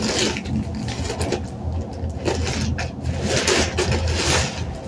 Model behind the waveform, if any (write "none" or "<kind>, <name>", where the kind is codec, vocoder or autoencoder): none